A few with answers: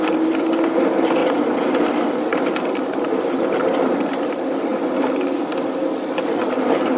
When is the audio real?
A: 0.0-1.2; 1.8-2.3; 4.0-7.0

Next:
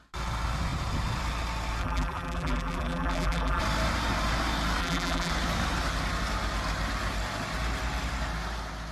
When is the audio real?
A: 0.0-1.8; 3.6-4.8; 5.3-8.9